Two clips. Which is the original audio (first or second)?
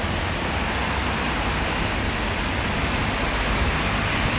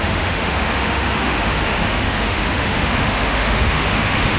first